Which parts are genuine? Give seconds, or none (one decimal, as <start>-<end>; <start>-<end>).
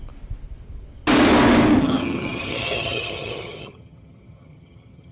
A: 0.0-1.8